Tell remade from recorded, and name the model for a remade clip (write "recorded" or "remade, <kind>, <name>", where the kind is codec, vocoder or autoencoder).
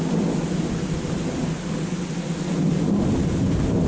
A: recorded